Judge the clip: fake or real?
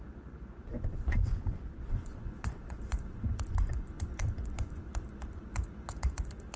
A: fake